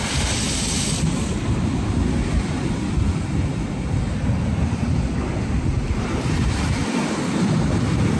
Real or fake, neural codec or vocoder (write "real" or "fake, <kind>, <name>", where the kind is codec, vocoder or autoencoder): real